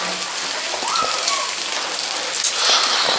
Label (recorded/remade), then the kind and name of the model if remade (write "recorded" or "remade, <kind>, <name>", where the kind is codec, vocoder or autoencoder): recorded